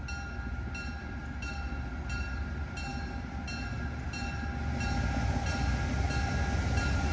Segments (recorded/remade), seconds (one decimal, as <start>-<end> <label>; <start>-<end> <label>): 0.0-7.1 recorded